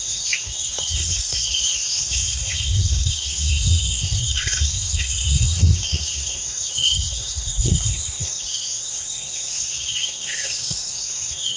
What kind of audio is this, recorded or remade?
remade